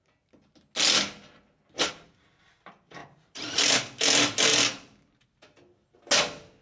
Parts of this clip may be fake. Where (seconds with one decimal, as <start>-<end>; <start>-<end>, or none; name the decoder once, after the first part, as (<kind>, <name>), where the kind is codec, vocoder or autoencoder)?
3.0-3.7 (vocoder, BigVGAN v2); 4.5-5.1